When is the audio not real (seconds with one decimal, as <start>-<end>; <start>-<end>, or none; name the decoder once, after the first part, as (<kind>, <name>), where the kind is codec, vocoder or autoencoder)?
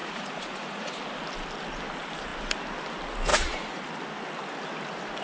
0.0-0.9 (vocoder, Vocos); 3.3-3.8